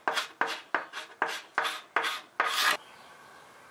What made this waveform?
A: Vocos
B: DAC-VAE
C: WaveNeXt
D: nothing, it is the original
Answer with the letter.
D